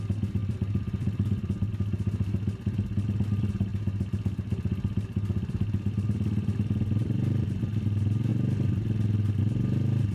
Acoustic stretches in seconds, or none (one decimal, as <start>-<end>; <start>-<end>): 0.0-0.4; 1.7-7.0; 7.6-10.1